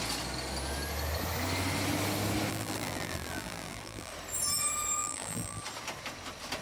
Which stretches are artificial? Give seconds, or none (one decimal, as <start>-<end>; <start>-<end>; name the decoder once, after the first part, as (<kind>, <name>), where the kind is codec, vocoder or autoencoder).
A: 2.5-4.1 (vocoder, BigVGAN v2); 5.0-5.6